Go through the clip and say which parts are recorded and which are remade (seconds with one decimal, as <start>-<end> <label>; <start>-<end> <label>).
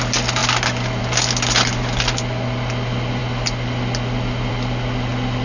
0.0-5.4 recorded